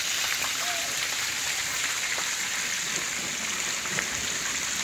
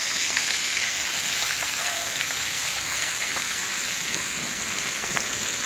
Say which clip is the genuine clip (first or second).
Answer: first